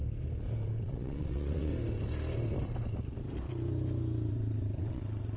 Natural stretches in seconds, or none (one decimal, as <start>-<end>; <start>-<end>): 0.0-0.7; 1.7-4.3